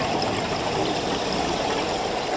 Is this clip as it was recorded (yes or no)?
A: yes